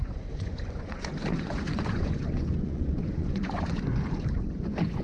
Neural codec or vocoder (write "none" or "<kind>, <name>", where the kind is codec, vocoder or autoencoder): vocoder, Vocos